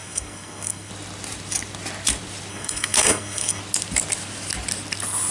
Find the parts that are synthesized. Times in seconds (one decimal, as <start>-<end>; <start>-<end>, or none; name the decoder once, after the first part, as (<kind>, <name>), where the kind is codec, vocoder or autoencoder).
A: 0.0-0.9 (codec, SNAC); 2.5-3.6